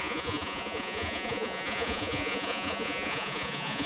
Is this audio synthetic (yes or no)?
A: yes